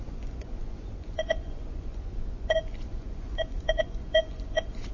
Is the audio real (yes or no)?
no